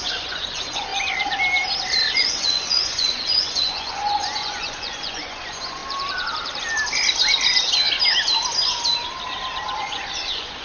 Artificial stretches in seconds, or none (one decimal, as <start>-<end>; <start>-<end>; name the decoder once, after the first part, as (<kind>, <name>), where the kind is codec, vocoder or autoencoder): 0.0-0.9 (vocoder, Vocos); 2.1-5.8; 9.8-10.6